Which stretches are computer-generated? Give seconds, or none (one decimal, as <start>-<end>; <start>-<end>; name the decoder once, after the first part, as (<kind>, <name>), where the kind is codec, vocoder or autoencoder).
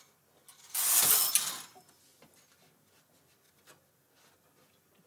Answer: none